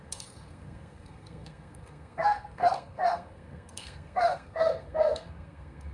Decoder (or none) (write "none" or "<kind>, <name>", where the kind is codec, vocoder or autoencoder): codec, SNAC